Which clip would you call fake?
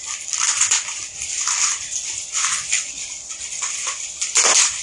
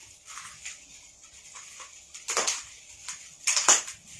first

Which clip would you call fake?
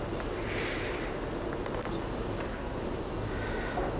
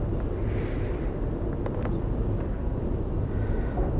second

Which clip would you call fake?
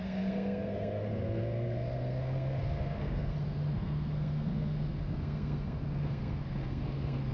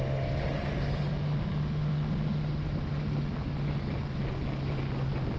first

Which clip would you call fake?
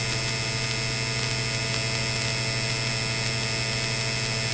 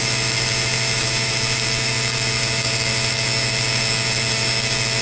second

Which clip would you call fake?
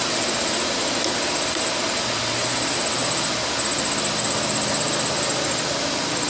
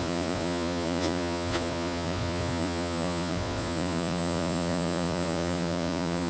second